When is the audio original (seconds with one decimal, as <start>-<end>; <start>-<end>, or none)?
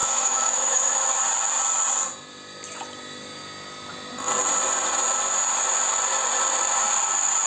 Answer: 1.2-7.5